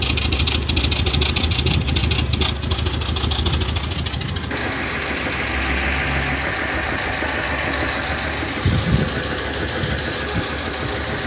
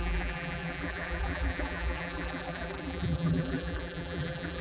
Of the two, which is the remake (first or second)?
second